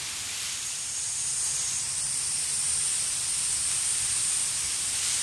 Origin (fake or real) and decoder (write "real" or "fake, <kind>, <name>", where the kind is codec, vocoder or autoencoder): real